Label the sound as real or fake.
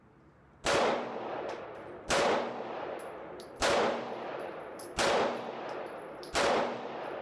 fake